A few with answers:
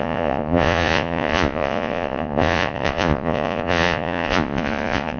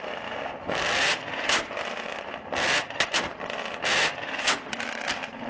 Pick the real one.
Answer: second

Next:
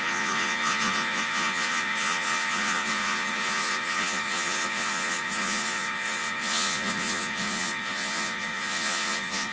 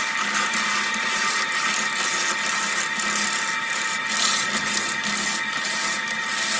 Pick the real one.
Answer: second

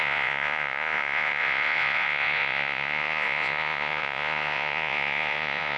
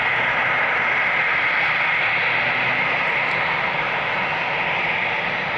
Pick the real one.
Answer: second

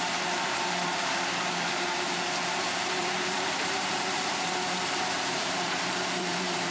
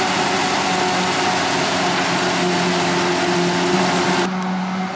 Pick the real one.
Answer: second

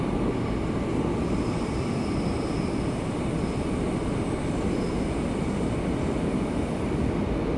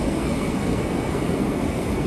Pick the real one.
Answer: first